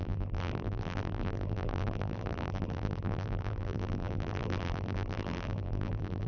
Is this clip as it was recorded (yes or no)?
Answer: no